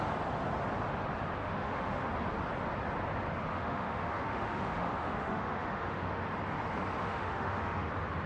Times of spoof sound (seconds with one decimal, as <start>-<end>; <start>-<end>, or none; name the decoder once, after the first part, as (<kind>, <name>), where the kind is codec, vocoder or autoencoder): 1.4-2.1 (autoencoder, DAC-VAE); 3.5-6.2; 7.0-7.9